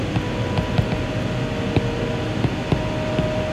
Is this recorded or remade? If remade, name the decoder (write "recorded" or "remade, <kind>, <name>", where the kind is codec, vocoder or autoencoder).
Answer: recorded